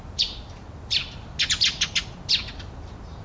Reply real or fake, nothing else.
real